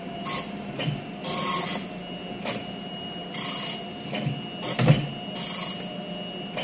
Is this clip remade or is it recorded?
recorded